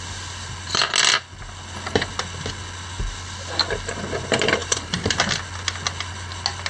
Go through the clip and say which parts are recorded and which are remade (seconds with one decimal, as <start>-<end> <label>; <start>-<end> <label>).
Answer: 0.0-4.6 recorded; 4.6-5.2 remade; 5.2-6.7 recorded